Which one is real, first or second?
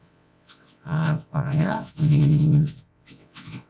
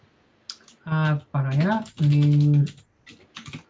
second